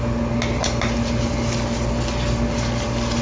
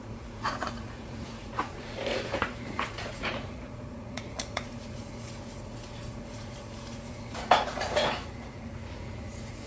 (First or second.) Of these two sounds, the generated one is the second